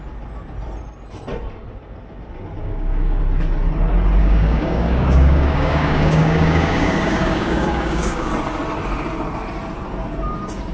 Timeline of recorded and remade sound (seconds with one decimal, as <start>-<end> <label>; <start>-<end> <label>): 0.0-2.6 recorded; 2.6-3.2 remade; 3.2-4.2 recorded; 4.2-8.3 remade; 8.3-10.7 recorded